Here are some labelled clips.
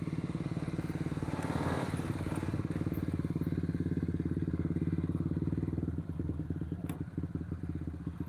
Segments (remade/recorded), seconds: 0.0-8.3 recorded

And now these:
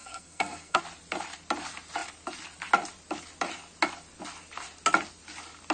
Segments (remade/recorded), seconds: 0.0-0.8 remade; 0.8-5.7 recorded